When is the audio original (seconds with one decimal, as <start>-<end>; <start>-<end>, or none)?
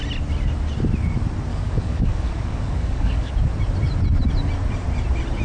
0.0-1.5; 3.3-5.4